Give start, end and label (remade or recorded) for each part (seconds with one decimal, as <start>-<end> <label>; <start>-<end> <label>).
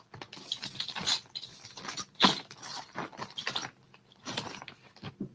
0.0-5.3 recorded